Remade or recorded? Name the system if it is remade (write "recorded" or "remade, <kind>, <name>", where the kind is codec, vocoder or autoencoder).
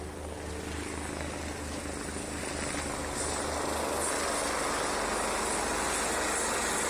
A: recorded